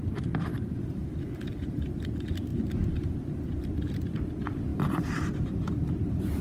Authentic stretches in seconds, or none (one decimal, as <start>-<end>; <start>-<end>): 1.0-1.5; 2.5-4.0